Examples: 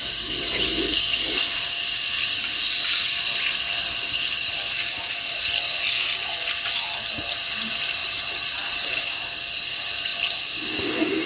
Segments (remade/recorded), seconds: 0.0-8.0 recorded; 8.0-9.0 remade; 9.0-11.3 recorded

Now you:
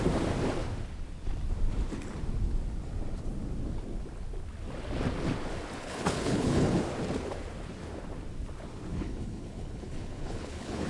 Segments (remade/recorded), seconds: 0.0-5.8 recorded; 5.8-6.8 remade; 6.8-8.9 recorded; 8.9-10.9 remade

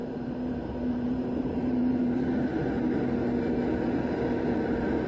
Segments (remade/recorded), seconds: 0.0-3.1 remade; 3.1-5.1 recorded

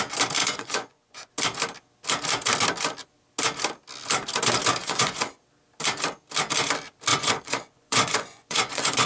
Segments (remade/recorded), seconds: 0.0-0.4 recorded; 0.4-1.3 remade; 1.3-4.8 recorded; 4.8-5.4 remade; 5.4-7.1 recorded; 7.1-9.1 remade

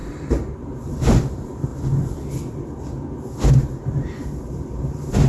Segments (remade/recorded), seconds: 0.0-1.7 remade; 1.7-3.5 recorded; 3.5-5.3 remade

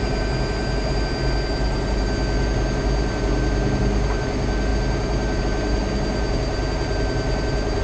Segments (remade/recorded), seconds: 0.0-7.8 recorded

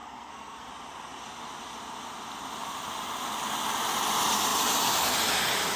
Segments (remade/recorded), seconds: 0.0-0.7 remade; 0.7-5.8 recorded

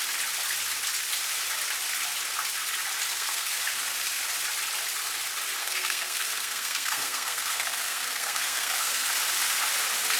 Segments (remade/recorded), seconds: 0.0-3.1 recorded; 3.1-3.6 remade; 3.6-5.6 recorded; 5.6-9.1 remade; 9.1-10.2 recorded